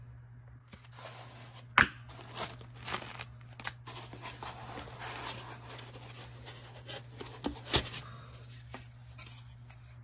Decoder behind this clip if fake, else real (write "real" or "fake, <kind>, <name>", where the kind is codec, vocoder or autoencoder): real